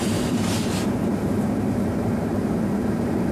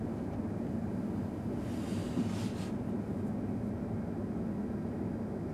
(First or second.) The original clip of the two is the second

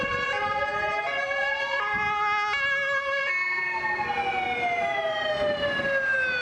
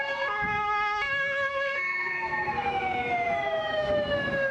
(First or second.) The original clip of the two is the first